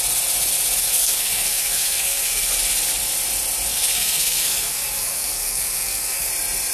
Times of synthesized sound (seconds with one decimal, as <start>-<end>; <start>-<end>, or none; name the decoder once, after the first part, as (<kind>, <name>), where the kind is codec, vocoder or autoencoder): 0.8-2.5 (codec, SNAC); 3.7-6.3